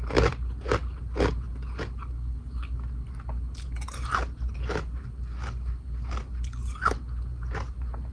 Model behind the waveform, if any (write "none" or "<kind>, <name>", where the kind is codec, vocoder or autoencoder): none